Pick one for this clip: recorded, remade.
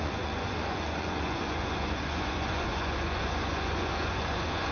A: remade